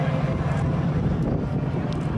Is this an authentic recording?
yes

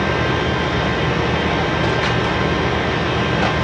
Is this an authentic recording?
yes